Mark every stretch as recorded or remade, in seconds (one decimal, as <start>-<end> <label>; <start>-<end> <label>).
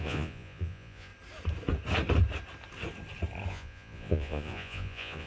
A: 0.0-1.1 remade; 1.1-3.5 recorded; 3.5-5.3 remade